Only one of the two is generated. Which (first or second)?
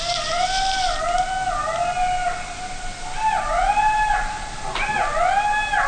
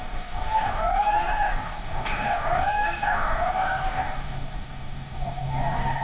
second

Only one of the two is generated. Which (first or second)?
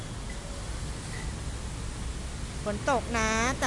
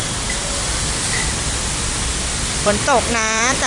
second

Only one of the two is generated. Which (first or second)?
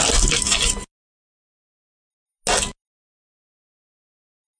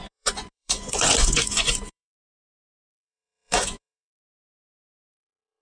second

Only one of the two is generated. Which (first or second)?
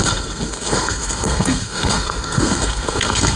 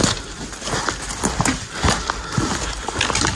first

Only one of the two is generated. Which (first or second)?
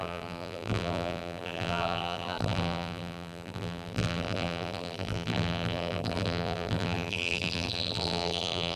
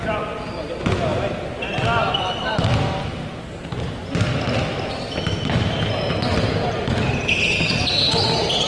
first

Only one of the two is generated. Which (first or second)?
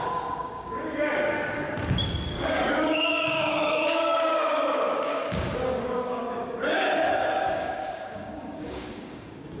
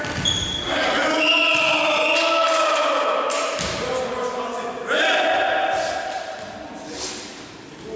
first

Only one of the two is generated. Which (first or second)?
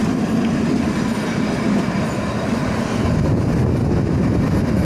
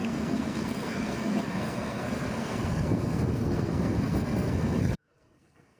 second